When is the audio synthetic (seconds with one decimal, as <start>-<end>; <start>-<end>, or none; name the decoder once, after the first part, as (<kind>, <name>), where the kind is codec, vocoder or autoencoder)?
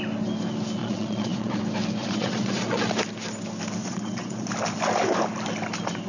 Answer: 0.8-1.6 (vocoder, Vocos); 2.0-2.8; 3.8-4.5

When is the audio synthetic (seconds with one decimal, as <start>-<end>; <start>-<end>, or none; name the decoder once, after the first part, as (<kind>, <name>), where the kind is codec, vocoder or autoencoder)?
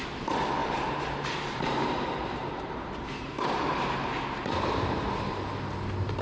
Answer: 0.6-3.7 (vocoder, BigVGAN v2)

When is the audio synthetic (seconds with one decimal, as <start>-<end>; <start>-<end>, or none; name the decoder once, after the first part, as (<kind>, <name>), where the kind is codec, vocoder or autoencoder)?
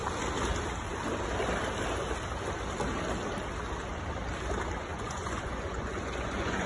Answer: 4.9-6.7 (vocoder, Vocos)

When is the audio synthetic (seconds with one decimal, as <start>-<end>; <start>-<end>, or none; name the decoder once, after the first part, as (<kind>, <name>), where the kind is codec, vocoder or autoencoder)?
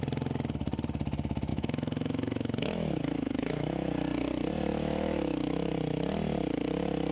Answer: 1.5-3.9 (autoencoder, DAC-VAE); 4.7-5.7